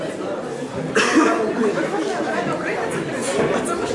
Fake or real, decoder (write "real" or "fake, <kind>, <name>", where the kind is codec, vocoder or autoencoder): real